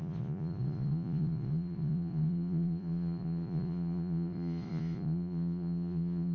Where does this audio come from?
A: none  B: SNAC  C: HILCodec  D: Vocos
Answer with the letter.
D